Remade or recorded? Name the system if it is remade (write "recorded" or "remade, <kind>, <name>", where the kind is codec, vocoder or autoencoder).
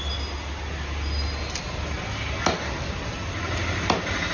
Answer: recorded